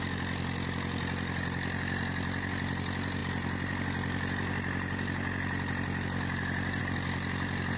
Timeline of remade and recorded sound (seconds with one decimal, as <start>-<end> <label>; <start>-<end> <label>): 0.0-7.8 recorded